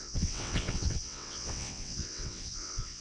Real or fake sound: fake